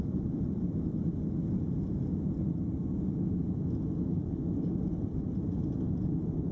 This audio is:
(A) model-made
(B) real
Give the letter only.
B